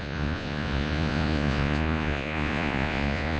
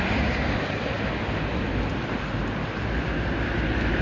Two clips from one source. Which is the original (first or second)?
second